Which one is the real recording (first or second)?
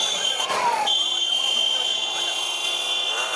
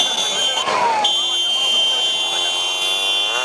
second